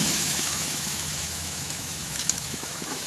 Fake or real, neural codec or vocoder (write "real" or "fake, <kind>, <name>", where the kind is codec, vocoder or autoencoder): fake, autoencoder, DAC-VAE